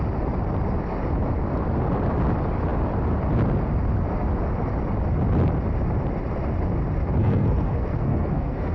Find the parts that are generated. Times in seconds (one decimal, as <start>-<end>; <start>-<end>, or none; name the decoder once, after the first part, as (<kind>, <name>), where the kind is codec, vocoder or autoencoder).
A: 7.2-8.7 (codec, SNAC)